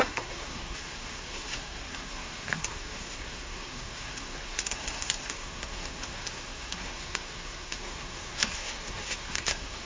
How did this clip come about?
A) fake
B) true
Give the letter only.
A